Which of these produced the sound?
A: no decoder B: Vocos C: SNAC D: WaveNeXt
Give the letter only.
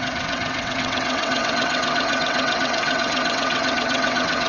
D